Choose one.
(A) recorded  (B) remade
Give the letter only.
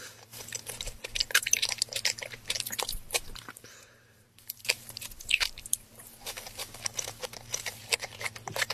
B